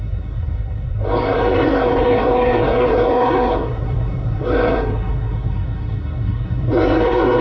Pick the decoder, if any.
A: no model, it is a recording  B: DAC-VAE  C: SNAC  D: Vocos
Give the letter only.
C